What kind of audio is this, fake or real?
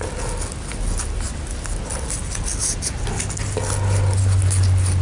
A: real